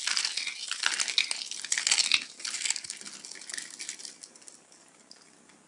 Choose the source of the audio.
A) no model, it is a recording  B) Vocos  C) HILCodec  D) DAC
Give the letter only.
A